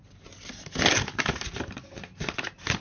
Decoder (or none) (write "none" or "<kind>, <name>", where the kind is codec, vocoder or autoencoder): none